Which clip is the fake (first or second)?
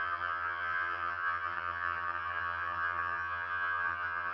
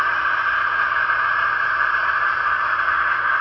first